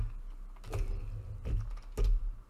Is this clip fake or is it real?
real